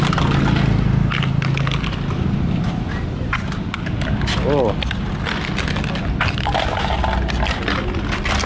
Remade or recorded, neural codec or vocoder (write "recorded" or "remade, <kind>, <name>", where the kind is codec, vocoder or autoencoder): recorded